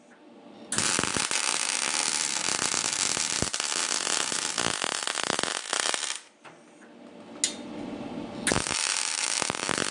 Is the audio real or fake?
real